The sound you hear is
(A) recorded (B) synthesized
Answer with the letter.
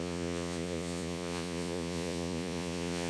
B